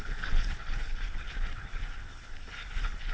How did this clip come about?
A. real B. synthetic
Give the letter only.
B